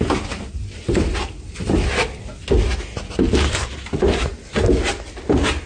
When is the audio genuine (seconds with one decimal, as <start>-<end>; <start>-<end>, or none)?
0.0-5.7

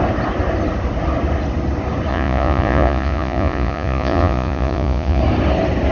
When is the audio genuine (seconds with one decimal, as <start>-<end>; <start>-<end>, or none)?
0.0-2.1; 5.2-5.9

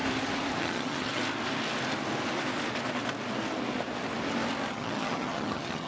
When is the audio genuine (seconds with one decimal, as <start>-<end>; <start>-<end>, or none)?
0.0-0.6; 1.2-4.7

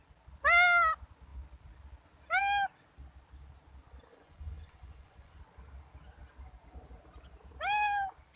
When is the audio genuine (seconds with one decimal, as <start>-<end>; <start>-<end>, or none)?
0.0-4.1; 5.4-8.4

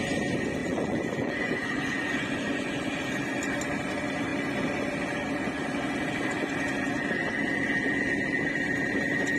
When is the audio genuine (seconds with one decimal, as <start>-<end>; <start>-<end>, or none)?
0.0-0.6; 2.9-9.4

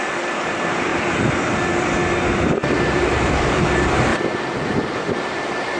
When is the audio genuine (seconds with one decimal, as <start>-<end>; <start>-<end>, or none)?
0.9-2.4; 4.1-5.3

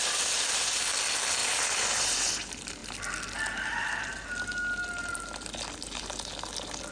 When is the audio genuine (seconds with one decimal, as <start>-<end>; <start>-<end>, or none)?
0.0-1.4; 2.3-6.9

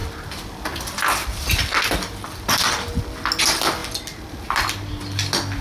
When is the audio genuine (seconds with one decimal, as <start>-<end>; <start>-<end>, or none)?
0.0-5.6